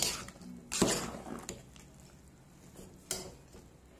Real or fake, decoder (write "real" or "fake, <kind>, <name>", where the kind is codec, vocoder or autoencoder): real